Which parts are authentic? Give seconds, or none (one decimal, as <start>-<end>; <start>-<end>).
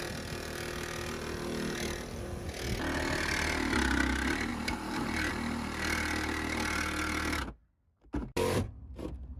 0.0-4.5; 5.3-9.4